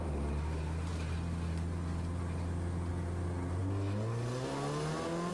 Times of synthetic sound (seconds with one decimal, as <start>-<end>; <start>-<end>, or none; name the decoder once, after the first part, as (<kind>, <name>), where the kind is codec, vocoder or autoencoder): none